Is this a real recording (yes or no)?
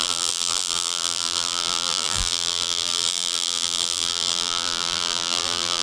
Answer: no